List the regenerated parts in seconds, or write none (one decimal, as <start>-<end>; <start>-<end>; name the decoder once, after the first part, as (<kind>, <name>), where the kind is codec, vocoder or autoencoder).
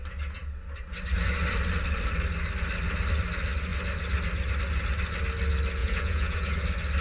5.8-6.5 (vocoder, Vocos)